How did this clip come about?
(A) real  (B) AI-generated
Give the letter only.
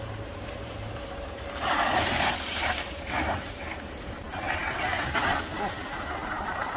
B